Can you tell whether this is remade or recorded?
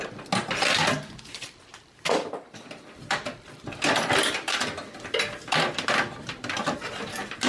recorded